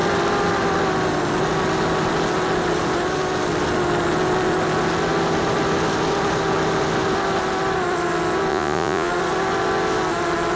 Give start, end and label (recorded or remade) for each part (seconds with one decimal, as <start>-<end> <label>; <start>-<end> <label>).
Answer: 0.0-8.5 recorded; 8.5-9.1 remade; 9.1-10.6 recorded